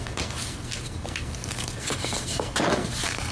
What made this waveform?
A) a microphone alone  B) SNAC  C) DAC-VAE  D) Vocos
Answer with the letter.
B